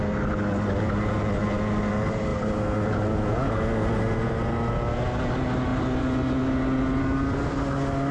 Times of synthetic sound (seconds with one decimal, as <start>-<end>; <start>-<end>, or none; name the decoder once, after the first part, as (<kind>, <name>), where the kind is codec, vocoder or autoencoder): none